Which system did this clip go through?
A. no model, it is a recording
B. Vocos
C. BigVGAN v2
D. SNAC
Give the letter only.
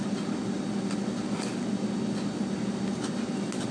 A